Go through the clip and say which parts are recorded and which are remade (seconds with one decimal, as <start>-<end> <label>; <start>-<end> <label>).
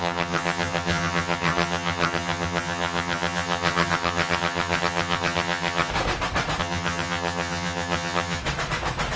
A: 0.0-5.9 remade; 5.9-6.6 recorded; 6.6-8.4 remade; 8.4-9.2 recorded